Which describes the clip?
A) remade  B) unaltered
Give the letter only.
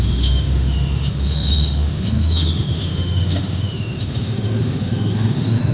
A